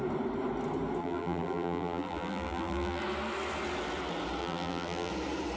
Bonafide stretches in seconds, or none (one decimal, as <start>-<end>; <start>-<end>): 0.0-1.0; 3.0-4.4; 5.1-5.6